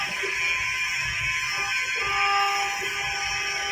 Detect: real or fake real